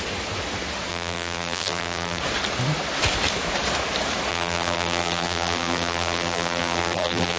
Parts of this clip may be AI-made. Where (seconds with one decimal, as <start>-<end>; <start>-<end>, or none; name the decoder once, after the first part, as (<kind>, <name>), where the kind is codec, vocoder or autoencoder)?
0.9-2.2 (vocoder, BigVGAN v2); 4.3-7.4